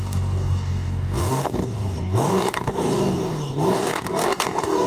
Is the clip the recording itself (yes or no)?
no